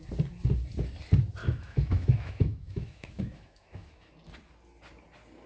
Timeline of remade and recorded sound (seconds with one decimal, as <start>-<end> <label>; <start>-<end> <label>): 0.0-1.4 recorded; 1.4-4.1 remade; 4.1-5.5 recorded